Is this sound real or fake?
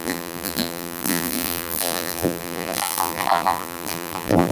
fake